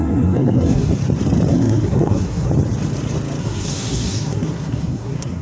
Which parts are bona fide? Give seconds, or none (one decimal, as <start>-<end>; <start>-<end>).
0.9-1.5; 2.5-3.4